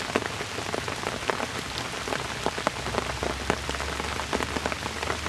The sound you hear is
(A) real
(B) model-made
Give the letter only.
A